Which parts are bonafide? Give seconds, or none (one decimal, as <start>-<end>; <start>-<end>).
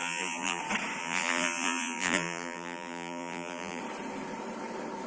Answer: 0.6-1.0; 3.8-5.1